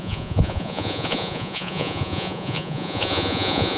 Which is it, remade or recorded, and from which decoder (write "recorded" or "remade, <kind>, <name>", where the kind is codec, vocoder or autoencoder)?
remade, vocoder, Vocos